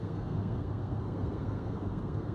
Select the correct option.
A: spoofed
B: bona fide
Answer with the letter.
A